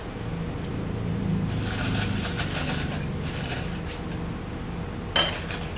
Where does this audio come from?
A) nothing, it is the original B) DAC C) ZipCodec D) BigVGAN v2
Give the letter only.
A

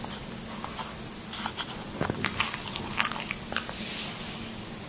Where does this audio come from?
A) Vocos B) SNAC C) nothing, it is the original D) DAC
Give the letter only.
C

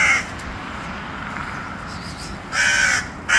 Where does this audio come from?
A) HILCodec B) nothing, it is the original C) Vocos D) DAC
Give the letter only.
B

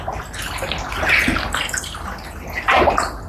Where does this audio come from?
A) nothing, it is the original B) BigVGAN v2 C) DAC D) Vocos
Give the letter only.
A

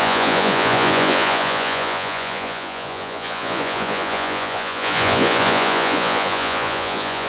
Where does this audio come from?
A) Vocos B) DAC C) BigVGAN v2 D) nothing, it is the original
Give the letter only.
A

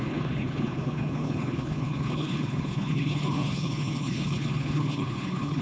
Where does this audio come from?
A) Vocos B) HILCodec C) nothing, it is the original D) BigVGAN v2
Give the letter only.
B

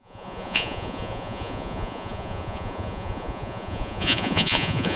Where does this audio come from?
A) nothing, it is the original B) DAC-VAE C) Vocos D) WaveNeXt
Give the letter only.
C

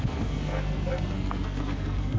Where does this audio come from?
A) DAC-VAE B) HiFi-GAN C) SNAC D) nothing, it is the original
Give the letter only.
C